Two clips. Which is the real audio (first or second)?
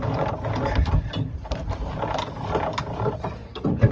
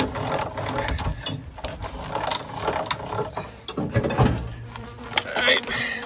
second